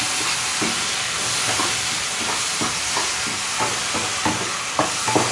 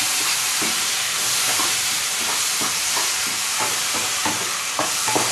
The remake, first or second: second